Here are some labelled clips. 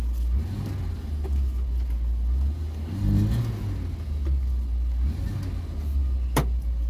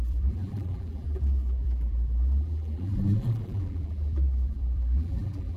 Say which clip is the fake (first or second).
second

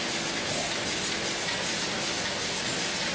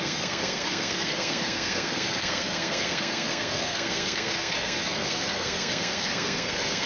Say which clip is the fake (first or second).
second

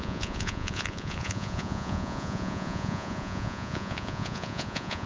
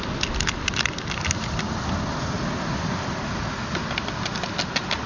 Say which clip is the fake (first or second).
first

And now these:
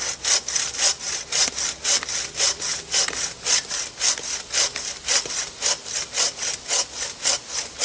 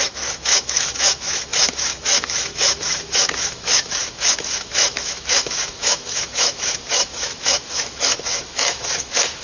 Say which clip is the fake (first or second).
second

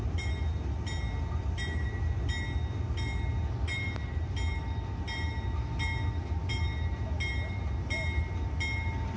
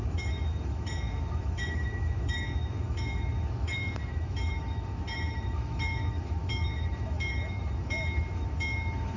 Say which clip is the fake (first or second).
second